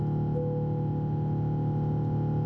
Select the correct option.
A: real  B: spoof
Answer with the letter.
A